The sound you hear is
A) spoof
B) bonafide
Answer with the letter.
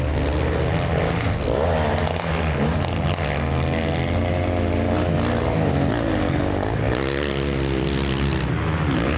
B